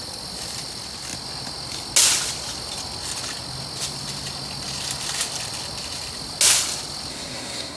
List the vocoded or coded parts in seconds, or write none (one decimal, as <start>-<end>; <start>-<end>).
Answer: 7.1-7.8